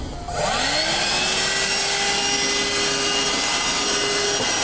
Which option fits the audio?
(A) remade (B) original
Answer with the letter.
B